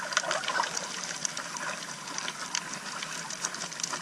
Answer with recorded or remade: recorded